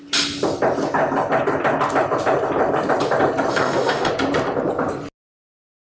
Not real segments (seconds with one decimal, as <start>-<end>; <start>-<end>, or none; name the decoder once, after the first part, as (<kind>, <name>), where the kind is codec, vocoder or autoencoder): 3.5-4.1 (codec, DAC)